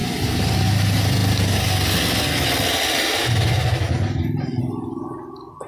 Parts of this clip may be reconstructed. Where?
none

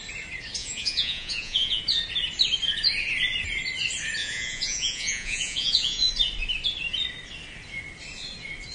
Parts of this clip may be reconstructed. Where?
0.6-1.8 (vocoder, Vocos); 4.2-6.1

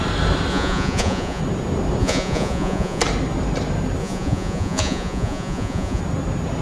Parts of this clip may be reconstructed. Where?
0.5-1.4 (vocoder, Vocos); 2.0-3.0; 4.0-6.0

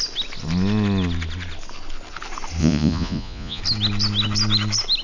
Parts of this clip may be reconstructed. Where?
2.6-3.6 (vocoder, Vocos)